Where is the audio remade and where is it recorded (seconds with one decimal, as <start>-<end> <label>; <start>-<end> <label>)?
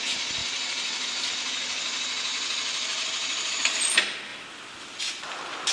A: 0.0-0.4 recorded; 0.4-1.3 remade; 1.3-2.3 recorded; 2.3-3.6 remade; 3.6-5.7 recorded